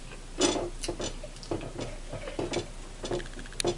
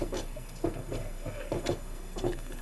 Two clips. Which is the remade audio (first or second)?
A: second